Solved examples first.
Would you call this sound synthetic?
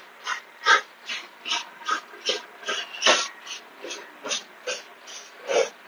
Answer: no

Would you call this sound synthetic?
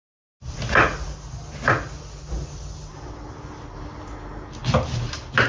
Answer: no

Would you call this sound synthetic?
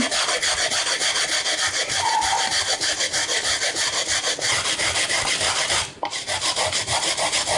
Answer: no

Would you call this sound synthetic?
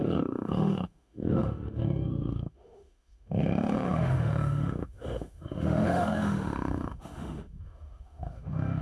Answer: yes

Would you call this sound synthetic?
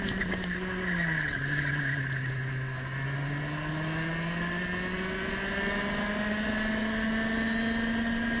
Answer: no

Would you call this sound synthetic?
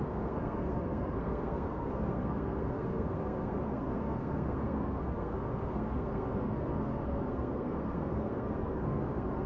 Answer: yes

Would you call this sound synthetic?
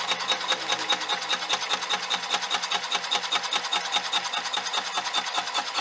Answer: no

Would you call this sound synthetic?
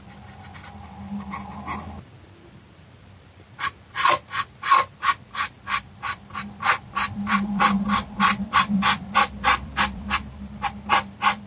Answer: yes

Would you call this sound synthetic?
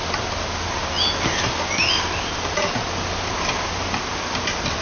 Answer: no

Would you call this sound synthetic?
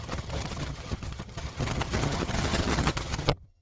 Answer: yes